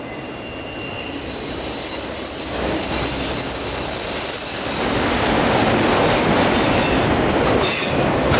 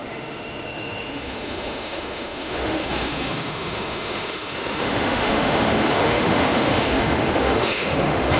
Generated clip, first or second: second